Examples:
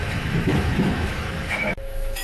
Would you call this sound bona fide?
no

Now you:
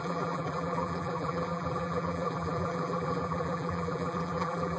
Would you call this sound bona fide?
no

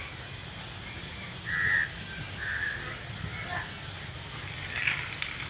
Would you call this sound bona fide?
yes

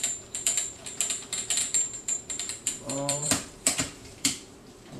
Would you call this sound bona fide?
no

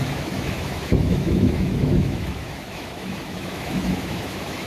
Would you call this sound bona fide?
no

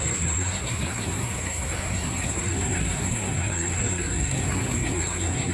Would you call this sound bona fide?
no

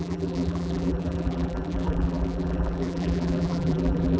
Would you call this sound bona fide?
no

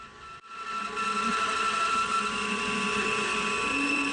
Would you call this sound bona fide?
yes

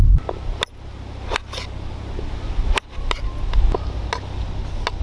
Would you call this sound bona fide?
yes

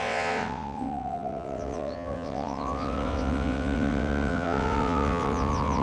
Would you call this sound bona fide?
no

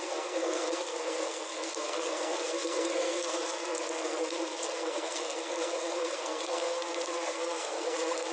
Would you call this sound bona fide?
no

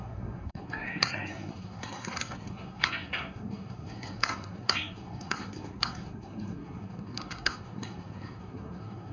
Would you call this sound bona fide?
no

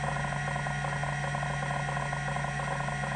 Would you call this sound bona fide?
yes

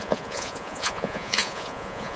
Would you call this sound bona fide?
no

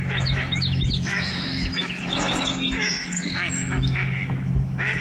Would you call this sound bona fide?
no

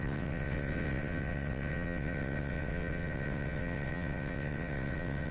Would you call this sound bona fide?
no